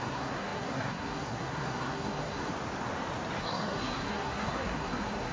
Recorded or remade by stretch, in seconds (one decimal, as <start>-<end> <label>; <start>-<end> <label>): 0.0-2.5 remade; 2.5-3.4 recorded; 3.4-5.3 remade